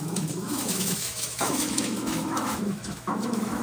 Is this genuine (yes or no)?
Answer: no